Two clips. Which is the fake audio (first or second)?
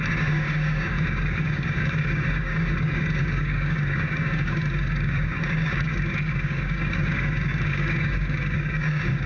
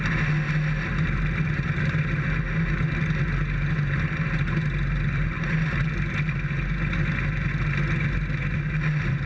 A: first